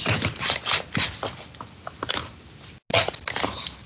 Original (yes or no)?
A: yes